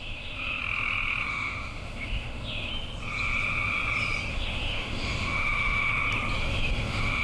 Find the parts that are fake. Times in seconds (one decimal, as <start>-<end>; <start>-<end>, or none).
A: 0.0-0.6; 1.3-2.7; 4.3-5.9; 6.4-7.2